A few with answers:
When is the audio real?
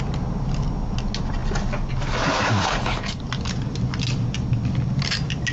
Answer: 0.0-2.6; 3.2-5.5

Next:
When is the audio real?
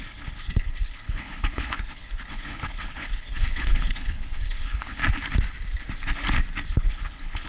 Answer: 5.0-6.7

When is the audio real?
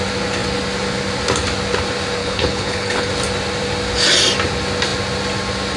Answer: 0.0-2.2; 3.1-5.8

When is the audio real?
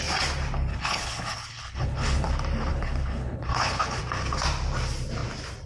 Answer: 0.0-0.7; 2.3-2.7; 4.0-5.7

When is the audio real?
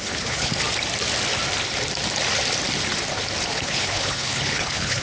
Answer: 0.5-3.5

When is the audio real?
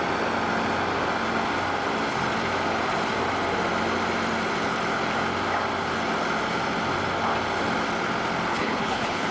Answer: 0.0-8.5